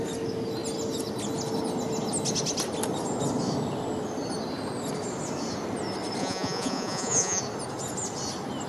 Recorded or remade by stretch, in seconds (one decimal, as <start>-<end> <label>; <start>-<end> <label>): 0.0-6.2 recorded; 6.2-7.4 remade; 7.4-8.7 recorded